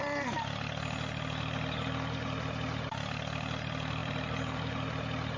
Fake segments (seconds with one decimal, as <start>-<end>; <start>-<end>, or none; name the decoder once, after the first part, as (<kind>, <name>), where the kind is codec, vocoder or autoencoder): 4.0-4.7 (vocoder, BigVGAN v2)